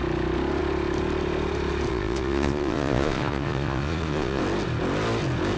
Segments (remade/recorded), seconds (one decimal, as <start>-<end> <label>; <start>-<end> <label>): 0.0-1.9 recorded; 1.9-4.4 remade; 4.4-5.6 recorded